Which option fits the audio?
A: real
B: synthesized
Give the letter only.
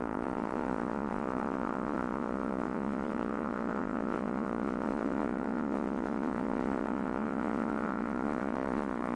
B